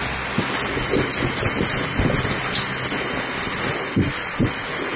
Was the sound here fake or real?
real